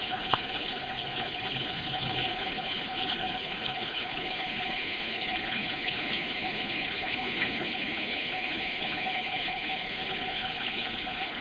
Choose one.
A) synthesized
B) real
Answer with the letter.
A